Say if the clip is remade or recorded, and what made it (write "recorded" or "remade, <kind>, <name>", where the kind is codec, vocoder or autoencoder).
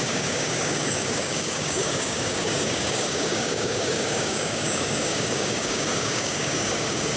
remade, codec, DAC